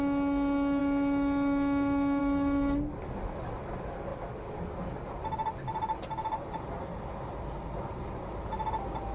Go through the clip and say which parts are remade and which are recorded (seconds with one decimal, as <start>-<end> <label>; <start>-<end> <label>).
0.0-9.1 recorded